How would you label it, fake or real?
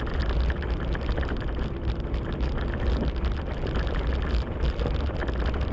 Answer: real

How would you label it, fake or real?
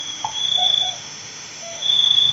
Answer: fake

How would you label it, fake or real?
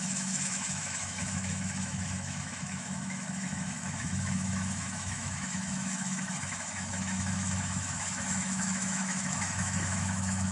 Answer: fake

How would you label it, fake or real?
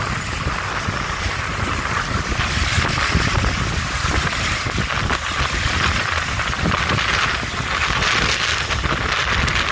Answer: real